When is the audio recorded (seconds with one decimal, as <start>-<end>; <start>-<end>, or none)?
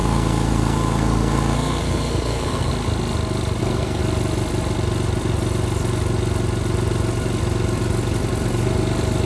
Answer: 2.7-3.6; 4.0-9.3